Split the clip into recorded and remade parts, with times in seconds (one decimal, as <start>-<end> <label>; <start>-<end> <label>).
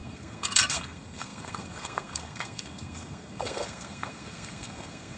0.0-5.2 remade